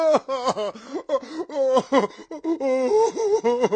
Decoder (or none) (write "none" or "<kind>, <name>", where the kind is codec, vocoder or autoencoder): none